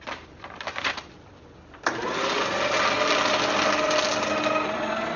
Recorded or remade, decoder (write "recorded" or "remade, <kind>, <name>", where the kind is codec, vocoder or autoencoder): recorded